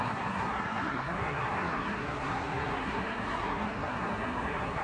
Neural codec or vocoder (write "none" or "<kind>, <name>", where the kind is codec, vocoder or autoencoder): codec, SNAC